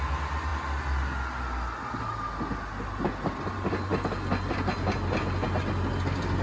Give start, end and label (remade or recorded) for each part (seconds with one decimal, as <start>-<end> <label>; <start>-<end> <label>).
0.0-6.4 recorded